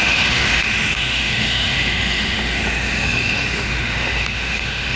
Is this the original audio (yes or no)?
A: no